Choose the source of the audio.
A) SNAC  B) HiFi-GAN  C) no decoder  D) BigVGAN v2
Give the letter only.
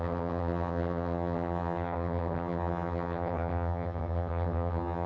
B